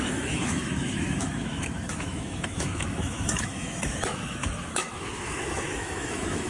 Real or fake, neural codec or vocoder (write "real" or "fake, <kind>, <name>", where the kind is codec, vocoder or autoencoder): fake, autoencoder, DAC-VAE